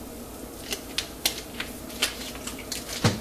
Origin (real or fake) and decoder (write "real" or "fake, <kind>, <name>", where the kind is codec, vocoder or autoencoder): real